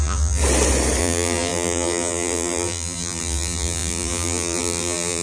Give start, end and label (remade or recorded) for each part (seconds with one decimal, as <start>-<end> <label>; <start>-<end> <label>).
0.0-0.4 remade; 0.4-1.0 recorded; 1.0-5.2 remade